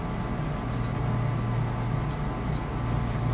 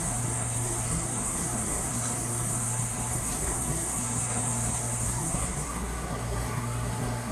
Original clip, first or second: first